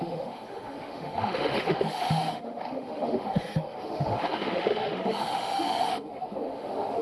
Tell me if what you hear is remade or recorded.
remade